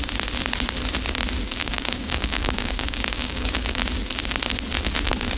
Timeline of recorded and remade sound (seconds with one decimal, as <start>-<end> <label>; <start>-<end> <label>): 0.0-1.6 recorded; 1.6-3.8 remade; 3.8-5.4 recorded